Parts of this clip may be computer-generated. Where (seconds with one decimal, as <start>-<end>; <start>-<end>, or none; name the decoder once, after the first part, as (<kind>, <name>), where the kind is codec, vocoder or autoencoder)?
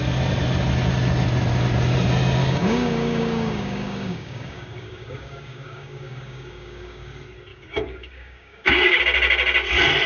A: 2.4-7.1 (codec, DAC); 7.5-9.0